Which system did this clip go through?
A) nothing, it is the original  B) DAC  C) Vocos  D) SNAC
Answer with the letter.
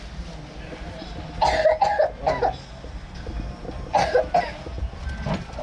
A